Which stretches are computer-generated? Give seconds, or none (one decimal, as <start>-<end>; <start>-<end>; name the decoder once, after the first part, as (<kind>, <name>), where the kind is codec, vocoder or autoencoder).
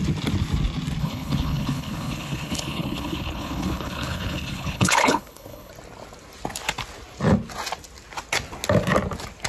1.0-5.7 (codec, HILCodec)